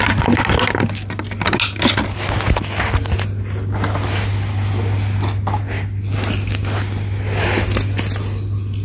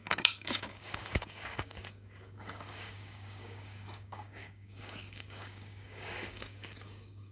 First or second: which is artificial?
second